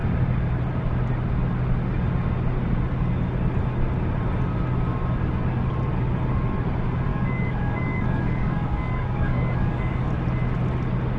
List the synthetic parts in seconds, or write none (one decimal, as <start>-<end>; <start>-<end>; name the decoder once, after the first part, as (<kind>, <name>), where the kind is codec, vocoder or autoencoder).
7.1-10.1 (codec, DAC)